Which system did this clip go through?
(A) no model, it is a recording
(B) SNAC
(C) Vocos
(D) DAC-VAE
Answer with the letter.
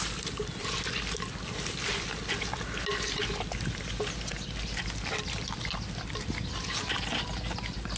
A